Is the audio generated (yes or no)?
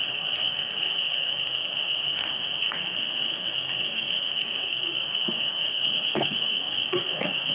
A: yes